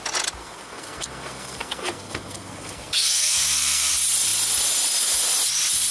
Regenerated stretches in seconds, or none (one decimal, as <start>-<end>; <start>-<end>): 0.4-3.9

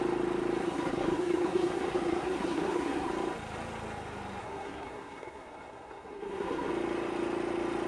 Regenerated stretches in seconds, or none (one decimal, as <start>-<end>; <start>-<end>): 0.6-3.1; 4.4-6.7